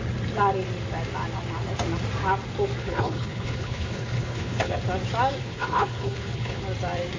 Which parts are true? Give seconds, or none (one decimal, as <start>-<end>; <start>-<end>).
0.0-2.8; 4.8-5.4; 6.6-7.2